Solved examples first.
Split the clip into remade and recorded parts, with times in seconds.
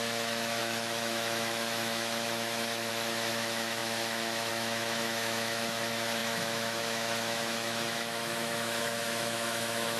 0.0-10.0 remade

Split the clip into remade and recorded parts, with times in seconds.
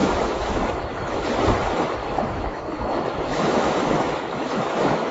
0.0-1.2 remade; 1.2-2.0 recorded; 2.0-5.1 remade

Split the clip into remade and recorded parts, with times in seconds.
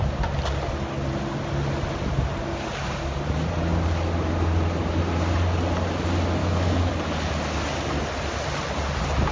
0.0-6.4 recorded; 6.4-6.9 remade; 6.9-9.3 recorded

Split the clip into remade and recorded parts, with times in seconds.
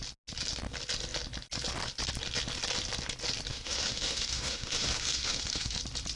0.0-3.5 recorded; 3.5-5.8 remade; 5.8-6.2 recorded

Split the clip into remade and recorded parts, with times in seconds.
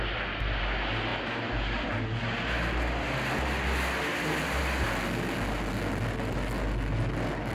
0.0-7.5 recorded